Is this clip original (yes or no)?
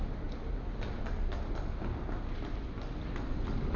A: yes